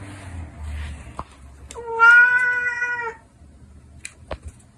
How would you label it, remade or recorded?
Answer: recorded